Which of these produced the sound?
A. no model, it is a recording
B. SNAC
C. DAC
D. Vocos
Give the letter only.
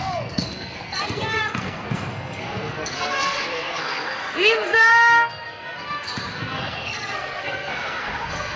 B